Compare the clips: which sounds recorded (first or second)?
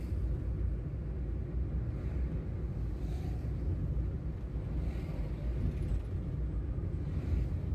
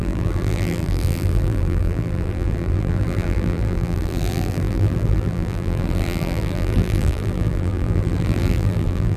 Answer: first